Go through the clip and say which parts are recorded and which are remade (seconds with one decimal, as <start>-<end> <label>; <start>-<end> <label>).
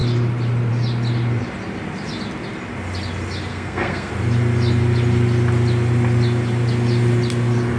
0.0-3.5 recorded; 3.5-4.1 remade; 4.1-7.8 recorded